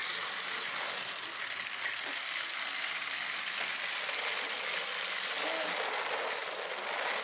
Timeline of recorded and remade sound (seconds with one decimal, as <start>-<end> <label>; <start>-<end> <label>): 0.0-7.2 recorded